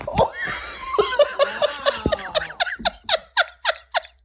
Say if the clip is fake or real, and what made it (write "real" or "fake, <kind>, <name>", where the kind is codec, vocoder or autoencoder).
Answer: real